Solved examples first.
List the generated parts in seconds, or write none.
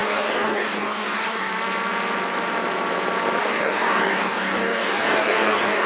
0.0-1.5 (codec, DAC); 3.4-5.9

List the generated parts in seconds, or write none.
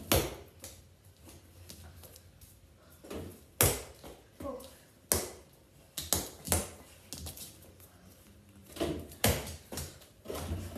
8.6-10.2 (vocoder, BigVGAN v2)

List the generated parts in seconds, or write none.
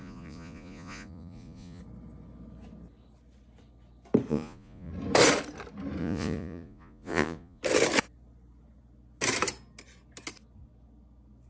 0.0-1.8 (vocoder, Vocos); 4.3-4.9; 6.0-7.6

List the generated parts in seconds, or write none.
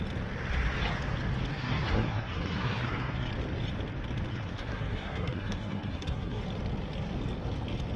1.5-3.3 (codec, SNAC); 4.3-6.4